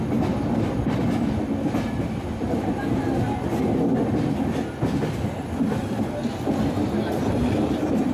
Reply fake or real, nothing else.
real